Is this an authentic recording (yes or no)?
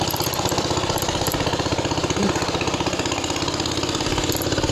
yes